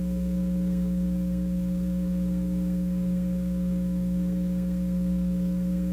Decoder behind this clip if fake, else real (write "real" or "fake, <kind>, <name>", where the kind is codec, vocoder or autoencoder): fake, codec, SNAC